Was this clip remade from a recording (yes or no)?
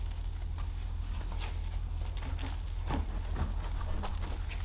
no